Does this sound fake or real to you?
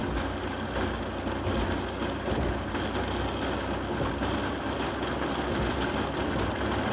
real